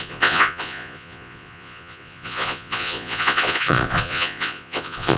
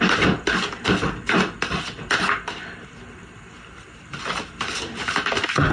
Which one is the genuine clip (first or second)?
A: second